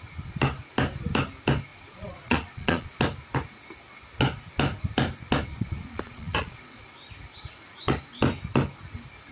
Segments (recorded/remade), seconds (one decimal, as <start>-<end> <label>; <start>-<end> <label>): 0.0-1.7 recorded; 1.7-3.0 remade; 3.0-5.5 recorded; 5.5-6.8 remade; 6.8-9.3 recorded